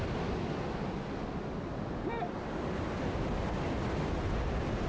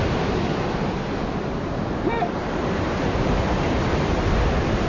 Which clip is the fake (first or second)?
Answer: second